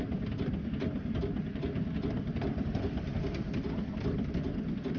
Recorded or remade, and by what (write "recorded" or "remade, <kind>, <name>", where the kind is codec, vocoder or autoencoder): recorded